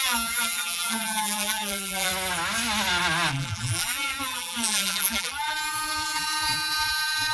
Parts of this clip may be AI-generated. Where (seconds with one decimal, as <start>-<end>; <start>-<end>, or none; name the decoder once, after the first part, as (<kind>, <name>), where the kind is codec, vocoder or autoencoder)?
0.0-2.1 (vocoder, BigVGAN v2); 3.3-7.3